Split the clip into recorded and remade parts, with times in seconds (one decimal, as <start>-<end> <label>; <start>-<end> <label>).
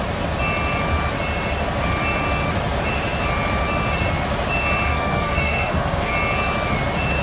0.0-4.9 recorded; 4.9-6.1 remade; 6.1-7.2 recorded